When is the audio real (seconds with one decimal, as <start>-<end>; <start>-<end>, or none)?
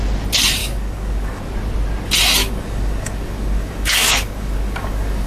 0.0-0.6; 1.4-2.4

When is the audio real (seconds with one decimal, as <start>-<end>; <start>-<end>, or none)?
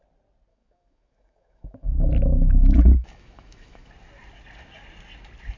0.0-0.5; 3.9-5.6